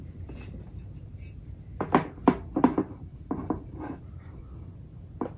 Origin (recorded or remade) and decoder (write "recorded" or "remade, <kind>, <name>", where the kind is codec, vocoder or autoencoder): recorded